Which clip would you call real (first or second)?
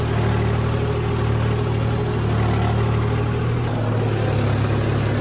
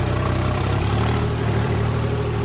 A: first